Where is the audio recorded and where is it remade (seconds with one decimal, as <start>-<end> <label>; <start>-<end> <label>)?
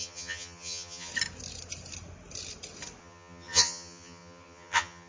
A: 0.0-1.1 remade; 1.1-3.0 recorded; 3.0-5.1 remade